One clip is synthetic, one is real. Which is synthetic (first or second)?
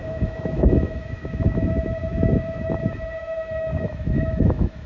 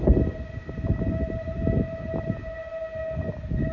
first